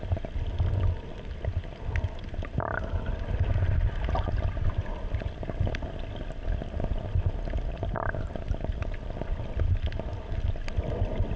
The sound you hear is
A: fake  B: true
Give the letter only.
B